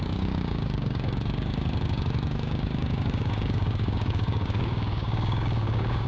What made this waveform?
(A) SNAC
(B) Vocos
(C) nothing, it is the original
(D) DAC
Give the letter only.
D